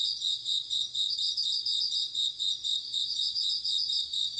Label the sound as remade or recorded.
remade